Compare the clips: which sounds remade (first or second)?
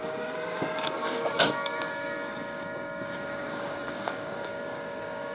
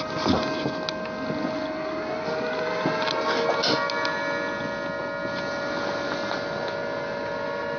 first